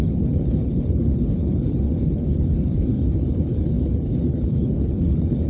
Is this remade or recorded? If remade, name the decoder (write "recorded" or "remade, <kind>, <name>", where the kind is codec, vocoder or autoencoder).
remade, codec, HILCodec